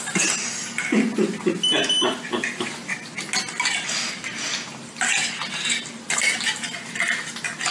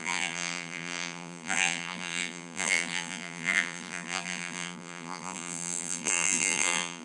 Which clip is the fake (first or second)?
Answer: second